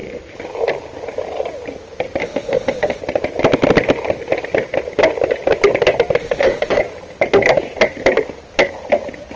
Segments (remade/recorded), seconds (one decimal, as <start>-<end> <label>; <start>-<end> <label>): 0.0-2.2 recorded; 2.2-3.0 remade; 3.0-6.2 recorded; 6.2-6.8 remade; 6.8-9.4 recorded